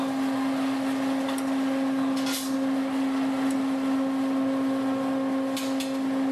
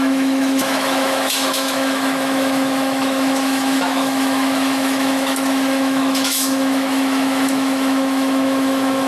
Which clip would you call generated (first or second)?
second